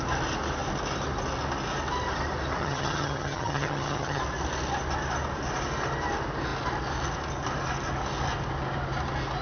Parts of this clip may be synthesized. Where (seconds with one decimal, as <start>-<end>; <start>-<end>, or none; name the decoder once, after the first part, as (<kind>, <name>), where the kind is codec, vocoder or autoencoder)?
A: 2.6-4.2 (vocoder, HiFi-GAN)